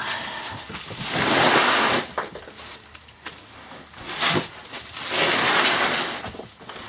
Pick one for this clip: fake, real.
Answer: real